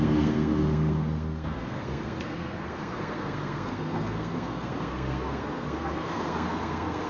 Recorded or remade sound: remade